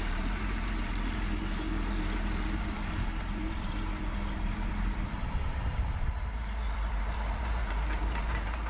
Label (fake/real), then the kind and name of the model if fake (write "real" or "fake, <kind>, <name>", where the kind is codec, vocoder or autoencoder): fake, vocoder, BigVGAN v2